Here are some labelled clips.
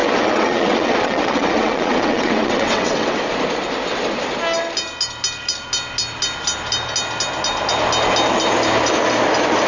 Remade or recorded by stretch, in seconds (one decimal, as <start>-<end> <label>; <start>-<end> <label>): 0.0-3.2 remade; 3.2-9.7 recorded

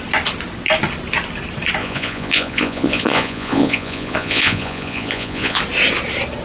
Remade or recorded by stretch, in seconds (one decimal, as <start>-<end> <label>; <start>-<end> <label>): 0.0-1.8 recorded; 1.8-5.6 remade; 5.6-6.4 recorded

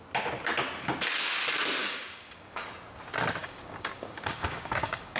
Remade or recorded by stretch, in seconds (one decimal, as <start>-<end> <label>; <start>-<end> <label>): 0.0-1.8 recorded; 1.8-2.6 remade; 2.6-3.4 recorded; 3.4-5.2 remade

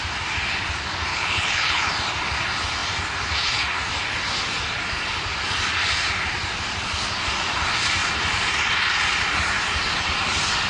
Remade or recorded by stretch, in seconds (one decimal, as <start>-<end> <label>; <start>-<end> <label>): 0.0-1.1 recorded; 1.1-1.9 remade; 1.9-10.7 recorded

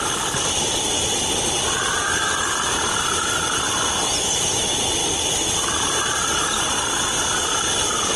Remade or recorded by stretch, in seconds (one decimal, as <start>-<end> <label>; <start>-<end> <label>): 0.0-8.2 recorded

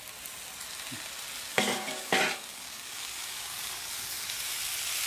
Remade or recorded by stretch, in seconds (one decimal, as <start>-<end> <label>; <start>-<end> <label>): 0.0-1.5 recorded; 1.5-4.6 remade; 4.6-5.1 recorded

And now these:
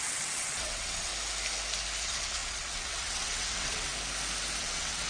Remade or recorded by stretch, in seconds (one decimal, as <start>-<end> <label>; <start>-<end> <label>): 0.0-1.1 remade; 1.1-2.0 recorded; 2.0-3.9 remade; 3.9-4.6 recorded; 4.6-5.1 remade